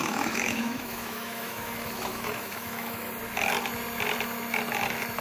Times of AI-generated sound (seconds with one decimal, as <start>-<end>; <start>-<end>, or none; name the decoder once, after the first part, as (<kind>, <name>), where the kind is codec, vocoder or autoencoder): 0.0-3.1 (autoencoder, DAC-VAE)